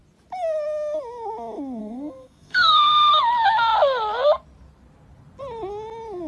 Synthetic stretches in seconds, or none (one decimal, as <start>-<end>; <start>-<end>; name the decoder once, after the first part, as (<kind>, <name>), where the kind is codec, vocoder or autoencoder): 1.8-3.1 (codec, SNAC)